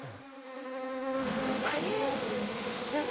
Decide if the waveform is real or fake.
fake